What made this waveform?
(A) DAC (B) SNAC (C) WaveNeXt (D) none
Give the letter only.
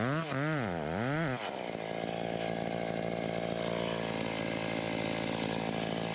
D